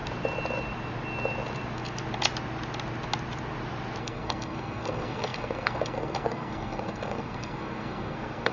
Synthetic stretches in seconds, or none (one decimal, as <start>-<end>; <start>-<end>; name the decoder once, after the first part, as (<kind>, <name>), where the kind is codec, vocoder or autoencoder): 4.0-8.5 (codec, SNAC)